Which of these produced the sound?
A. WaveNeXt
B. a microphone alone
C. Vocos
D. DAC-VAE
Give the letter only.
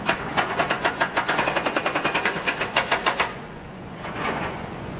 C